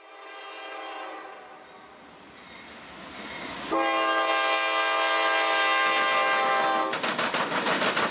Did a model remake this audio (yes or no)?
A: no